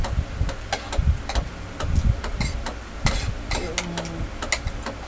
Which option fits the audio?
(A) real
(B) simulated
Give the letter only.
A